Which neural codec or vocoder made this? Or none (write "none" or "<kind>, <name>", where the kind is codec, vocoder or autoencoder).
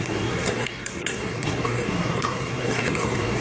codec, SNAC